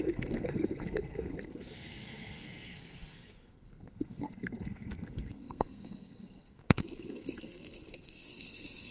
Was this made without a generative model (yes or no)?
no